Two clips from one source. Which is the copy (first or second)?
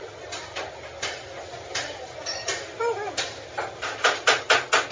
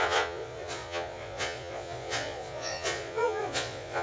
second